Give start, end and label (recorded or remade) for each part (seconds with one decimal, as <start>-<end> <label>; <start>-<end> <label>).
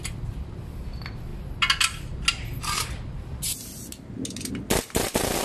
0.0-5.4 recorded